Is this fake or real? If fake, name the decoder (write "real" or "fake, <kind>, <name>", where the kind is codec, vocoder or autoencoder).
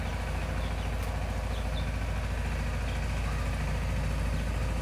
real